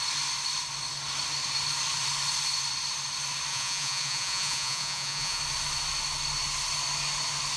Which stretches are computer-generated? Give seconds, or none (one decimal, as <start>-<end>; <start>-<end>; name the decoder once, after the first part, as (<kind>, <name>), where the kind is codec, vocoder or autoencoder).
3.5-5.4 (vocoder, Vocos)